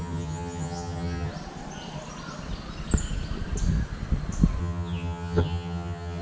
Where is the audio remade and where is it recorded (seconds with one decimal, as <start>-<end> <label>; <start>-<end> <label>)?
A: 0.0-1.3 remade; 1.3-4.6 recorded; 4.6-6.2 remade